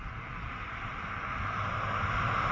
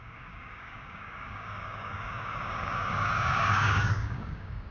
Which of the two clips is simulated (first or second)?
second